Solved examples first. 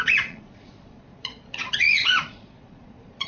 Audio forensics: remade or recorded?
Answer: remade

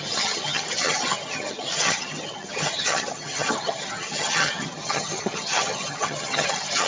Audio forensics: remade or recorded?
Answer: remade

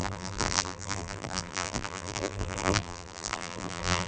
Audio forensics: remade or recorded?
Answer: remade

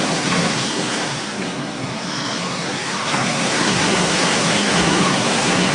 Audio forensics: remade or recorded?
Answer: remade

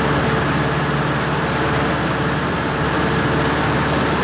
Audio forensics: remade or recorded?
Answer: recorded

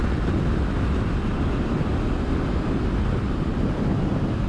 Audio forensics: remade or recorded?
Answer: remade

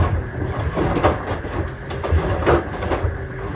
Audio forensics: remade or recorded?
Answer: recorded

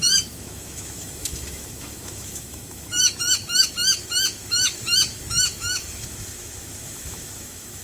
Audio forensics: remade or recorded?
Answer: remade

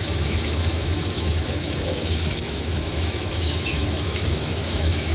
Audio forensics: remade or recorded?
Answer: remade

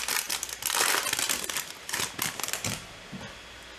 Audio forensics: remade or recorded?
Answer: recorded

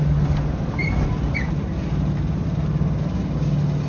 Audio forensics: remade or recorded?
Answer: recorded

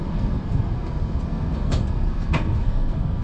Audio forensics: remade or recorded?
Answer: remade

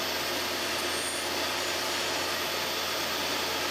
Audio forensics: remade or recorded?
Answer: recorded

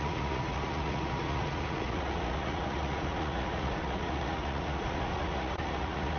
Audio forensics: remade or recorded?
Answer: remade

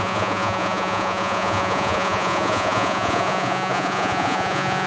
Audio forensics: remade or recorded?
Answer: remade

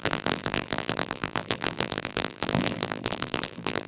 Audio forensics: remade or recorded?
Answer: remade